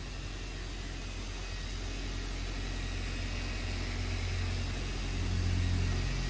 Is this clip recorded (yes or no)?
yes